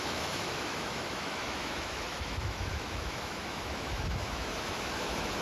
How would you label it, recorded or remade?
remade